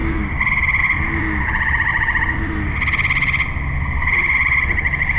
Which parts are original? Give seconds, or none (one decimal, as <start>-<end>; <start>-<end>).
0.0-5.2

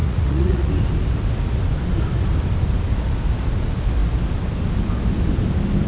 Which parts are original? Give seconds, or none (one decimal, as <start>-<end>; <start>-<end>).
0.7-5.9